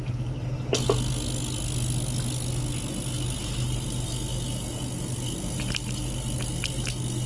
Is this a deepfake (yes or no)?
no